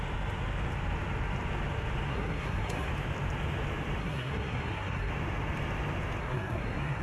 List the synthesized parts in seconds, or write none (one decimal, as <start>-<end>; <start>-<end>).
2.1-2.9; 4.0-5.1; 6.2-7.0